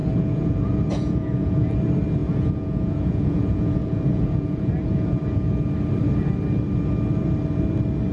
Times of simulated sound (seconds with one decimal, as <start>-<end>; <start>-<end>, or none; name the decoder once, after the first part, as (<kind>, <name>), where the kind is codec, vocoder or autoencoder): 0.0-1.8 (vocoder, Vocos); 2.2-5.5